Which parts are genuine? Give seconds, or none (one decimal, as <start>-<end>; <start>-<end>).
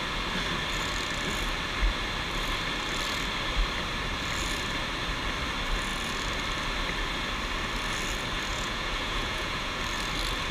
0.0-8.5; 9.8-10.5